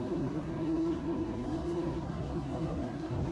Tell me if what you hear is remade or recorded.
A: remade